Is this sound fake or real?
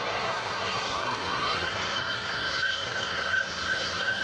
fake